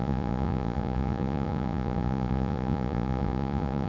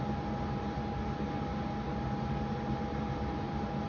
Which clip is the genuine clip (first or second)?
second